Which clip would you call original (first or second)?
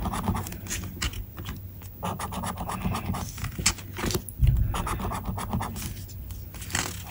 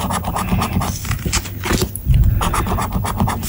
first